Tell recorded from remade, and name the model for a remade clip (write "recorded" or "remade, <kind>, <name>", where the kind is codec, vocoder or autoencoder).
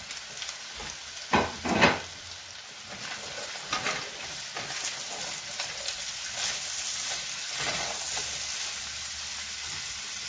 recorded